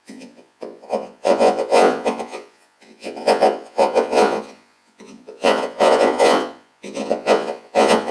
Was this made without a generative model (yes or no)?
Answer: no